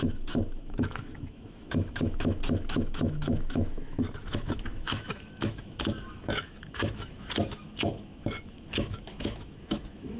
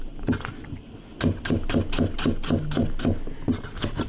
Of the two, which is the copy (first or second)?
first